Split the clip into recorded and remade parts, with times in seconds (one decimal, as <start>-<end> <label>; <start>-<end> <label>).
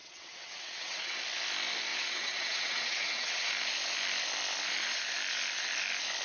0.0-1.2 remade; 1.2-1.9 recorded; 1.9-3.5 remade; 3.5-6.2 recorded